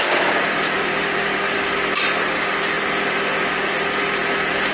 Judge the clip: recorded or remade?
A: remade